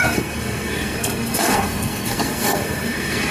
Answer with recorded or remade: remade